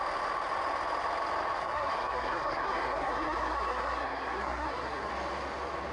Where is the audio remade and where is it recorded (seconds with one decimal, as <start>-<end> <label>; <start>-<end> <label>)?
0.0-1.6 recorded; 1.6-5.1 remade; 5.1-5.9 recorded